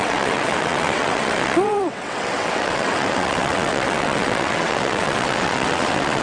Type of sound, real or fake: fake